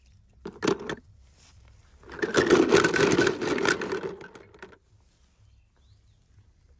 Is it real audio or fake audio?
real